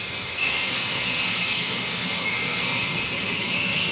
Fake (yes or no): yes